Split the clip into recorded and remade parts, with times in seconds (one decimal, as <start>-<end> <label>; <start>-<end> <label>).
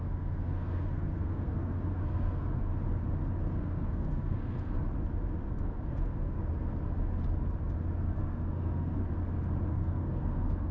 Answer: 0.0-2.7 remade; 2.7-3.4 recorded; 3.4-4.8 remade; 4.8-5.5 recorded; 5.5-6.4 remade; 6.4-8.1 recorded; 8.1-9.0 remade; 9.0-9.7 recorded; 9.7-10.7 remade